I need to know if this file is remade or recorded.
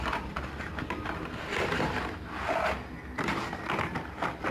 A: recorded